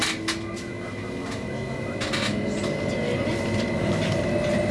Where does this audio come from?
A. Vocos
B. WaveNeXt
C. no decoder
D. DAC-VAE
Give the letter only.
C